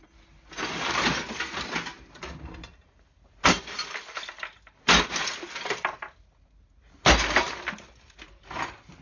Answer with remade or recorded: recorded